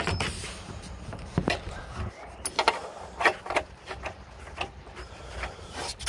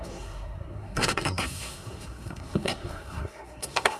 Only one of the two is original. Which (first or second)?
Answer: first